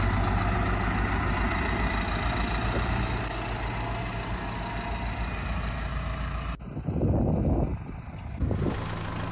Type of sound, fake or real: real